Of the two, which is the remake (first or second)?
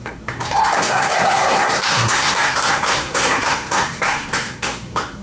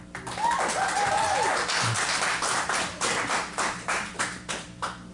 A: first